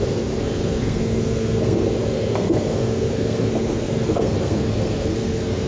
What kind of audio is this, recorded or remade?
remade